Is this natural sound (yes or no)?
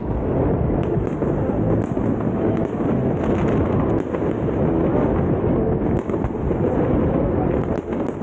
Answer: yes